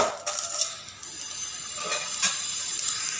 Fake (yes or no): no